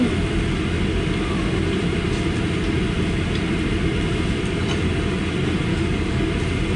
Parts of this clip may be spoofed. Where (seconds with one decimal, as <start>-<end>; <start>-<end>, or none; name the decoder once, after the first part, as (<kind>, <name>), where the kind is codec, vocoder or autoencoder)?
5.7-6.3 (codec, DAC)